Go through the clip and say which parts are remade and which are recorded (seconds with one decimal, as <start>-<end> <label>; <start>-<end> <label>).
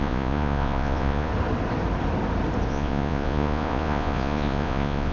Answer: 0.0-1.3 remade; 1.3-2.7 recorded; 2.7-5.1 remade